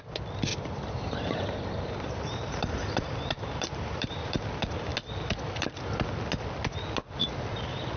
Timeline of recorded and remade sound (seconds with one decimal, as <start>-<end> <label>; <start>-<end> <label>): 0.0-0.5 recorded; 0.5-4.5 remade; 4.5-8.0 recorded